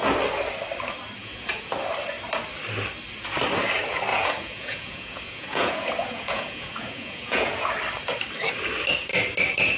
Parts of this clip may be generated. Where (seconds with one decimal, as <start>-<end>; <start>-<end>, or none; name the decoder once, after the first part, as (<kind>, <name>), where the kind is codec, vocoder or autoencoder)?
1.2-1.7 (vocoder, Vocos); 4.1-7.7